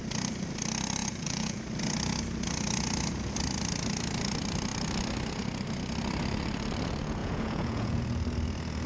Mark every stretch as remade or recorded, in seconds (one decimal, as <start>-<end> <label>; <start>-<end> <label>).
0.0-1.0 recorded; 1.0-1.6 remade; 1.6-7.2 recorded; 7.2-8.0 remade; 8.0-8.9 recorded